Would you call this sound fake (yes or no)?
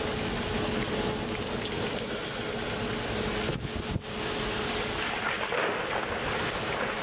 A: no